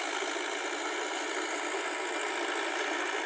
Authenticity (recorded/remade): recorded